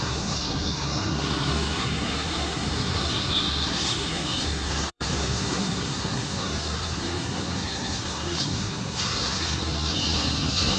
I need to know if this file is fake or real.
fake